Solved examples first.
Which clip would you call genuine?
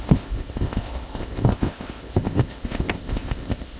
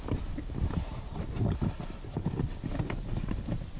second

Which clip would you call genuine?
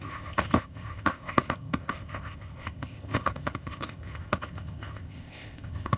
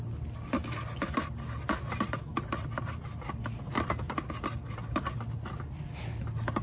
second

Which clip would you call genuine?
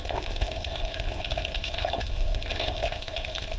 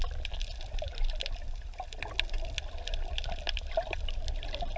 second